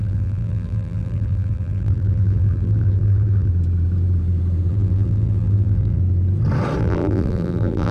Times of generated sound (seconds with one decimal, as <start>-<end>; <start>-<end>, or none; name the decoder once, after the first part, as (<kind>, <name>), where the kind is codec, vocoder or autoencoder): 0.0-3.5 (vocoder, BigVGAN v2); 4.7-6.0; 6.8-7.9